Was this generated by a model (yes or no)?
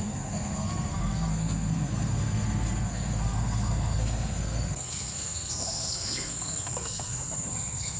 yes